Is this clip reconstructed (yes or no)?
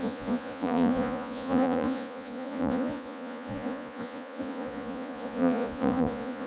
yes